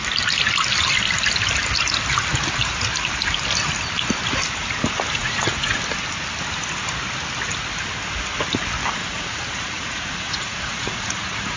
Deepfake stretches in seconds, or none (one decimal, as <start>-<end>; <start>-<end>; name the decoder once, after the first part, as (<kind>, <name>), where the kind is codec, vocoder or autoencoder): 5.2-5.8 (vocoder, Vocos); 9.0-11.6